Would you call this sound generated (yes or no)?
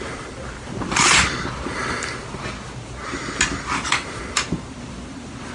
no